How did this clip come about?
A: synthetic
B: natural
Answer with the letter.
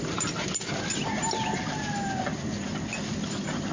B